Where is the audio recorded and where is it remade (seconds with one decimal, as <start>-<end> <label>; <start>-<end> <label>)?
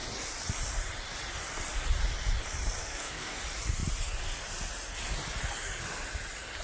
0.0-2.8 recorded; 2.8-3.4 remade; 3.4-6.6 recorded